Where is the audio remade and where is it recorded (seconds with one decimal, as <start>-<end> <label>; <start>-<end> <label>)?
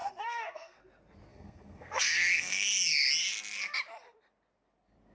0.0-0.8 remade; 0.8-1.3 recorded; 1.3-3.1 remade; 3.1-5.1 recorded